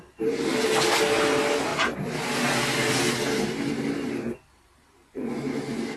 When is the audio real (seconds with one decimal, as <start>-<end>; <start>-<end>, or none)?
0.0-5.0; 5.5-6.0